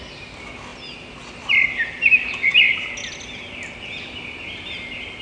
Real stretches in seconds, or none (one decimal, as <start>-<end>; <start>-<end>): 0.0-5.2